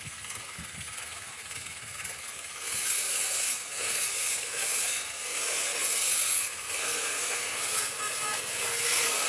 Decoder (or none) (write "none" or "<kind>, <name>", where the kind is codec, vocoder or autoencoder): codec, SNAC